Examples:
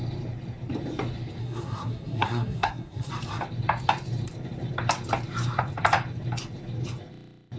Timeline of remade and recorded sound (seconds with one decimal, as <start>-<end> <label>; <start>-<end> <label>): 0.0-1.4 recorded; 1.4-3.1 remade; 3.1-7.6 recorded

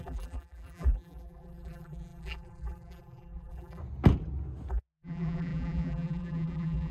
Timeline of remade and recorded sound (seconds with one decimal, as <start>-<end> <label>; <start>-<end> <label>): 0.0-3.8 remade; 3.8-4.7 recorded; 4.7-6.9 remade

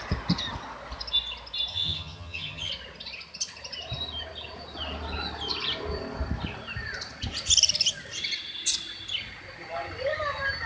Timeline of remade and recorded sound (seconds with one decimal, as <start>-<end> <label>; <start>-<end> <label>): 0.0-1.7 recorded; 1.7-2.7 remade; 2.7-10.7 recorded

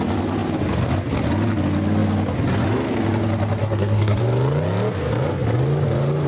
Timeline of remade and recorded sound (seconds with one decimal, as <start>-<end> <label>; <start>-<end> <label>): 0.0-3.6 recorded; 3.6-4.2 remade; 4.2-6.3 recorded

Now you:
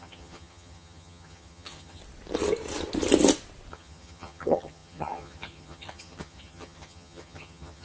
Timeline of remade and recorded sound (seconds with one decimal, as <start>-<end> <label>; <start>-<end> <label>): 0.0-2.0 remade; 2.0-3.7 recorded; 3.7-7.8 remade

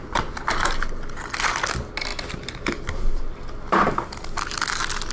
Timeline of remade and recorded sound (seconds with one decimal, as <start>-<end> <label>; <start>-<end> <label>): 0.0-5.1 recorded